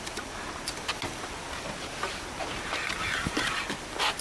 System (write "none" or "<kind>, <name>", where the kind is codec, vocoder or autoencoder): none